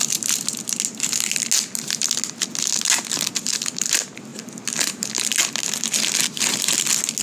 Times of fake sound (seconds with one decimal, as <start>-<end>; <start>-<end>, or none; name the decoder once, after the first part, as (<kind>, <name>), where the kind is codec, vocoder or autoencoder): none